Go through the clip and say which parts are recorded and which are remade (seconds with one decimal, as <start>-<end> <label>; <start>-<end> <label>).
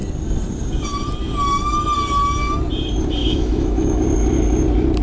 0.0-3.2 recorded; 3.2-4.0 remade; 4.0-5.0 recorded